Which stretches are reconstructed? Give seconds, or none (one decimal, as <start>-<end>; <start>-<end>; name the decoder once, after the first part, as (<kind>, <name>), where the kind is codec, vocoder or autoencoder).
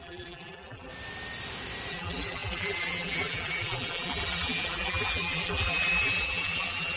0.0-0.9 (vocoder, BigVGAN v2); 1.9-7.0